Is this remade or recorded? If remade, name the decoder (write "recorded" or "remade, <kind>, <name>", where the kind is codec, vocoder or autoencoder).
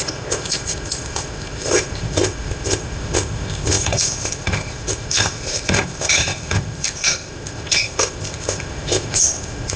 remade, codec, ZipCodec